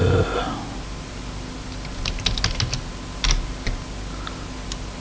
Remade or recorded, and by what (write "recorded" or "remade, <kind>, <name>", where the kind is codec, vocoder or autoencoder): recorded